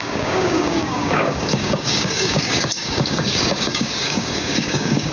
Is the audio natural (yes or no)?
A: no